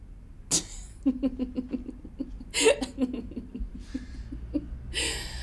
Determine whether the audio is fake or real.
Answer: real